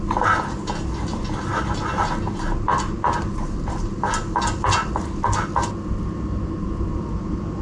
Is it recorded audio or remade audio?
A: recorded